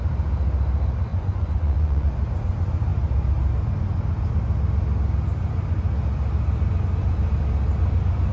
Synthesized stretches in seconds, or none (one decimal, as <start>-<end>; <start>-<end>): 1.1-2.1